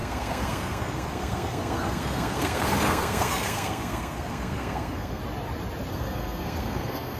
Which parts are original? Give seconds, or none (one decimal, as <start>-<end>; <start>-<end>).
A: 5.2-5.9